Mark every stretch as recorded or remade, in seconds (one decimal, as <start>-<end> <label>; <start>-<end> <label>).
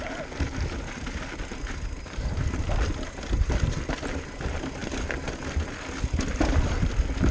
0.0-7.3 recorded